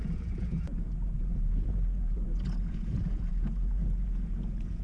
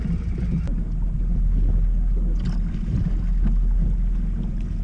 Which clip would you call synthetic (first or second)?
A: first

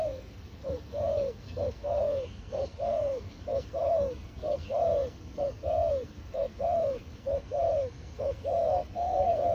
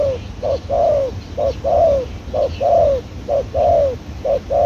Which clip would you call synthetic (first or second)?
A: first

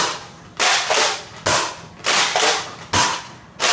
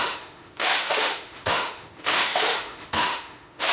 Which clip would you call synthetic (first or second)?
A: second